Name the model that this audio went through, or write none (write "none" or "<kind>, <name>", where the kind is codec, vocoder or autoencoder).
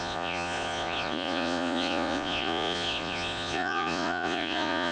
vocoder, Vocos